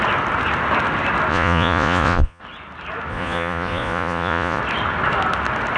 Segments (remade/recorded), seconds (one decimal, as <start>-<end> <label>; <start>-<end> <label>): 0.0-1.3 recorded; 1.3-2.4 remade; 2.4-3.1 recorded; 3.1-4.6 remade; 4.6-5.8 recorded